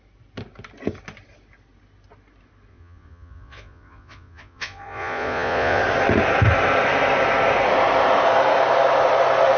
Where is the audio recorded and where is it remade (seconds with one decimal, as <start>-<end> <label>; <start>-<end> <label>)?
0.0-2.7 recorded; 2.7-5.8 remade; 5.8-9.6 recorded